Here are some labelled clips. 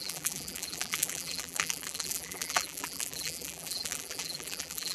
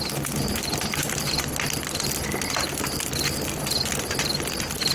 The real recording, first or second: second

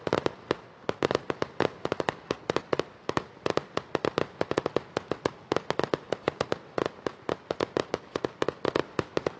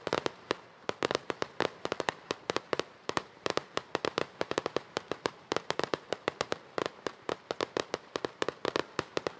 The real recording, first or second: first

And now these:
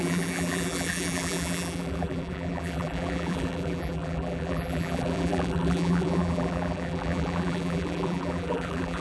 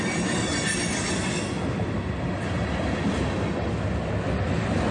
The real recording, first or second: second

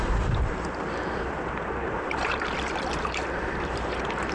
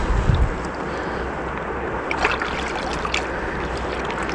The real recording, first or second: second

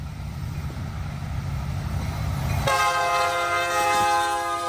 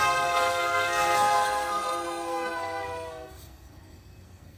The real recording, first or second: first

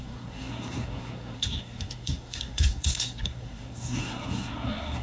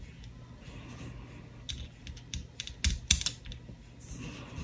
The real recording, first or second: second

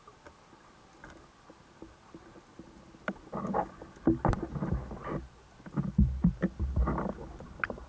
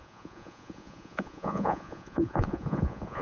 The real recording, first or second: first